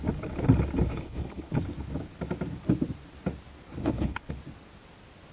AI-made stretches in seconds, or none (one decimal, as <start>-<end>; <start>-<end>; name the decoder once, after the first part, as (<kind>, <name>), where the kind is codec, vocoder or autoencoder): 0.9-1.5 (codec, HILCodec); 3.8-4.3